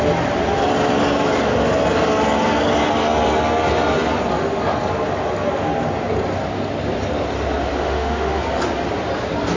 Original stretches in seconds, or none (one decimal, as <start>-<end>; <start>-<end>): 0.0-7.8; 8.4-9.6